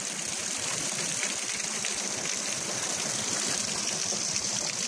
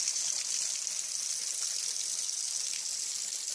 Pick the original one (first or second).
second